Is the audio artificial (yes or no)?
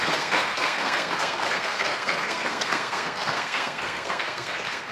yes